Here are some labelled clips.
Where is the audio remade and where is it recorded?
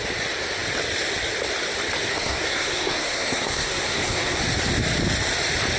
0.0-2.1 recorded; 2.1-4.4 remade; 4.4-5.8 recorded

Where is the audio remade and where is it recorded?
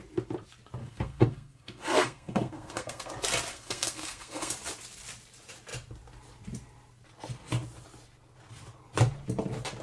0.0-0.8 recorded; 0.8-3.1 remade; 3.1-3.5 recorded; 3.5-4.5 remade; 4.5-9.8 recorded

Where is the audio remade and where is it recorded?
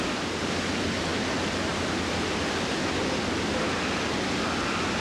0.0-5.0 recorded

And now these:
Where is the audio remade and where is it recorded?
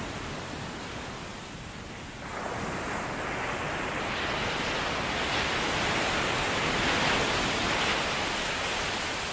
0.0-9.3 recorded